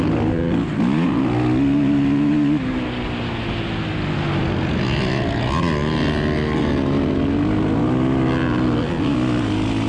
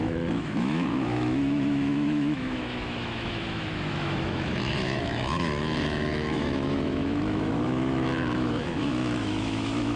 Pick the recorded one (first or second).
first